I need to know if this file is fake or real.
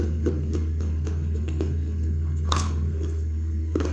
fake